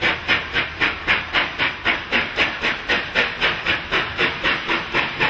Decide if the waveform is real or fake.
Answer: fake